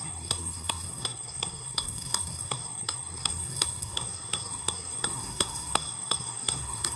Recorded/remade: remade